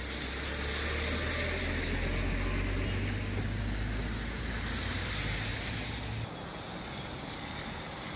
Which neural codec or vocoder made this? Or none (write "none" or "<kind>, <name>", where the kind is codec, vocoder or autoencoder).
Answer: none